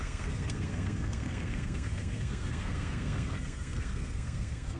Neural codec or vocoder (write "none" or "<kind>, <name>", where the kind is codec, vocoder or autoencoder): codec, SNAC